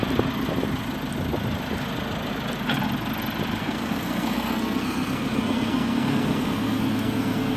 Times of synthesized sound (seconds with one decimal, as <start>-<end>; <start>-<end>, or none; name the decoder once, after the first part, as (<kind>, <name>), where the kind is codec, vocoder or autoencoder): 3.6-7.6 (codec, SNAC)